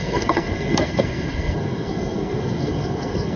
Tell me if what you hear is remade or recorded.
remade